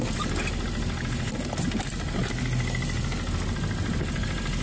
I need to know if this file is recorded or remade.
recorded